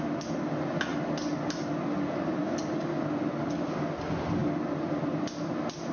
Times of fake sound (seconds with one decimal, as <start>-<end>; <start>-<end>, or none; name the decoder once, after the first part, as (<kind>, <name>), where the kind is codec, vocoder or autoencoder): none